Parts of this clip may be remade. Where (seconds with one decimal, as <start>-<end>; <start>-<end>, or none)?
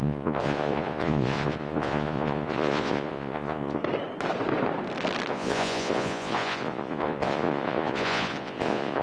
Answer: 0.0-3.8; 5.3-9.0